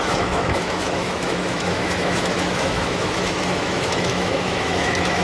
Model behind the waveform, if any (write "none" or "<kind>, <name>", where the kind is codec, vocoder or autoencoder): autoencoder, DAC-VAE